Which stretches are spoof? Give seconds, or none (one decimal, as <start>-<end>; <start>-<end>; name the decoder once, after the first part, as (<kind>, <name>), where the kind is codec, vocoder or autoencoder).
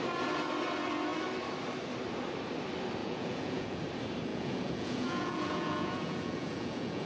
3.0-3.8 (vocoder, Vocos); 4.3-7.1